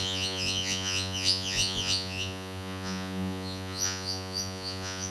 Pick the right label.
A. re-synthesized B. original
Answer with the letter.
A